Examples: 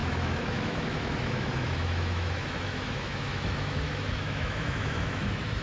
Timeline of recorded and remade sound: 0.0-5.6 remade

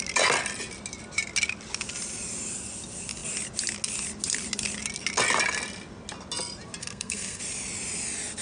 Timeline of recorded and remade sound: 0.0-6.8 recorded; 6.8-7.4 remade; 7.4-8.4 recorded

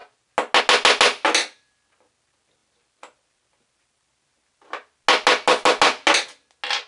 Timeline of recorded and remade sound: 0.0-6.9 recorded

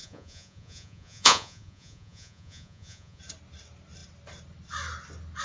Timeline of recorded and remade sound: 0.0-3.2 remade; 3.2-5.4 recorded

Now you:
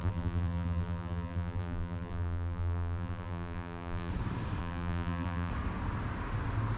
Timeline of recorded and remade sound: 0.0-4.1 remade; 4.1-4.6 recorded; 4.6-5.5 remade; 5.5-6.8 recorded

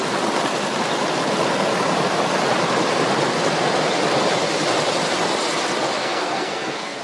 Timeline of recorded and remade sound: 0.0-6.0 recorded; 6.0-7.0 remade

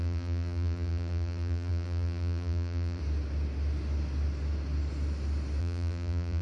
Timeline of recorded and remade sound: 0.0-3.0 remade; 3.0-5.6 recorded; 5.6-6.4 remade